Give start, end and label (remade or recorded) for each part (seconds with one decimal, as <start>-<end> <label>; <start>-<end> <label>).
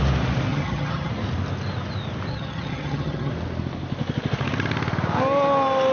0.0-0.5 recorded; 0.5-1.1 remade; 1.1-2.3 recorded; 2.3-3.3 remade; 3.3-5.9 recorded